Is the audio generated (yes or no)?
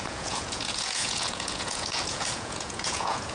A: yes